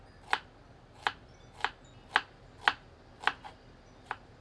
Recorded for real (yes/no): yes